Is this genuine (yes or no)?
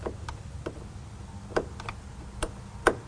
yes